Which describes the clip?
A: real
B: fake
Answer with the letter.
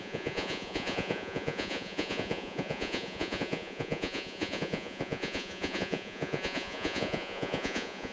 B